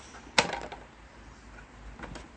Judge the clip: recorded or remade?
recorded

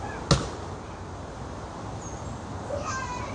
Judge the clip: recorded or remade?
recorded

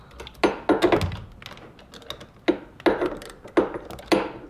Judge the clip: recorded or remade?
recorded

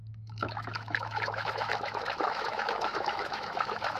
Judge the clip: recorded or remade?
remade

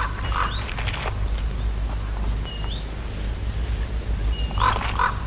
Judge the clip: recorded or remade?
recorded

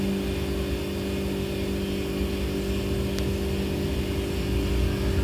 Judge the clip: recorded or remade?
recorded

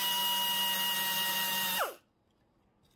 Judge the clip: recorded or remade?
recorded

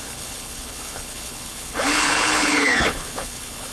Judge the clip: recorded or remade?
remade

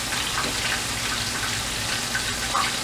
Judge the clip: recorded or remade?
recorded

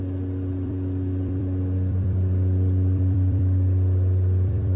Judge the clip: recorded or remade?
remade